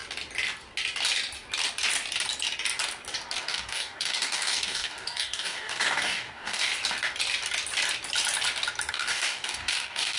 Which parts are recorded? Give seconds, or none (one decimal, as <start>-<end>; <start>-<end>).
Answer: 0.0-3.4; 6.7-8.9